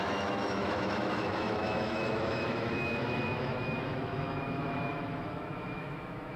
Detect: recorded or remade remade